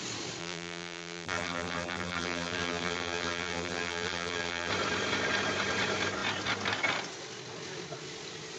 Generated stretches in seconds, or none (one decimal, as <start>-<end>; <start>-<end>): 0.4-4.7